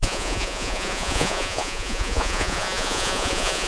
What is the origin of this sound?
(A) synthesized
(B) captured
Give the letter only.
A